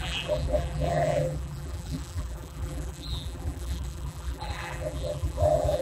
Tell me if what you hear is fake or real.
fake